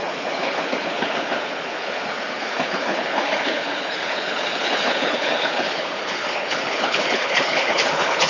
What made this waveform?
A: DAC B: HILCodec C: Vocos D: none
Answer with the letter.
B